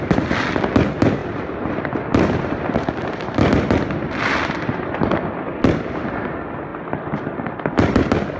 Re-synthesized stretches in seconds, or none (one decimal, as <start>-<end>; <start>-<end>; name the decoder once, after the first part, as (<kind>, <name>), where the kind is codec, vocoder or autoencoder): 1.2-4.8 (vocoder, BigVGAN v2); 6.7-7.6